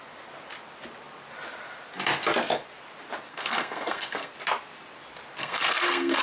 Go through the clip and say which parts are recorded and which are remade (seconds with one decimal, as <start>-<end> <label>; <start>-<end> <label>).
0.0-3.3 recorded; 3.3-4.3 remade; 4.3-5.4 recorded; 5.4-6.2 remade